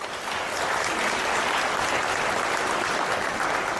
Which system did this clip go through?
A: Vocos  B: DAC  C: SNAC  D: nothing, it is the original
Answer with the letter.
D